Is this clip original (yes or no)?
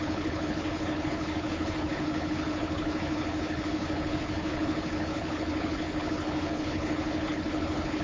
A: no